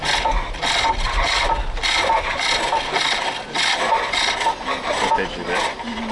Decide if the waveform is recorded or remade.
recorded